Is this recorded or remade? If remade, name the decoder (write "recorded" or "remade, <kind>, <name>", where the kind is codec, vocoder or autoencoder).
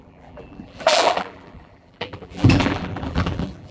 remade, vocoder, BigVGAN v2